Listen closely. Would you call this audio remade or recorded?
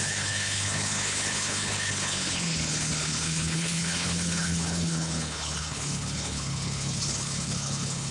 remade